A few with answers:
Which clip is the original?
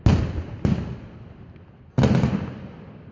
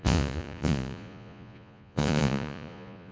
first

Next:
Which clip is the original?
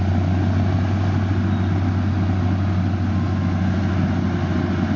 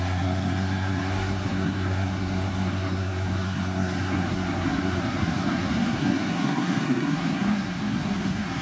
first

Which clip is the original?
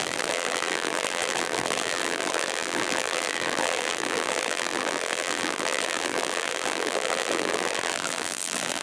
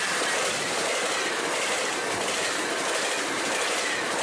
second